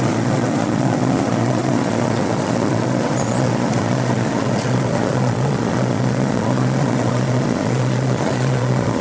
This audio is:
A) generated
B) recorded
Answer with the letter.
A